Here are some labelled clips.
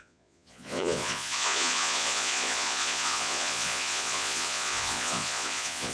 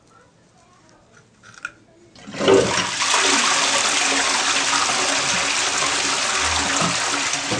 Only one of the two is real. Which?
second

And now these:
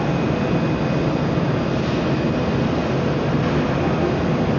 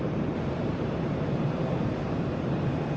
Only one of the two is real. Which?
first